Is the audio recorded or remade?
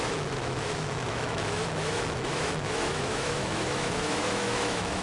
remade